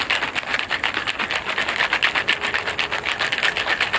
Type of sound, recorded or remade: recorded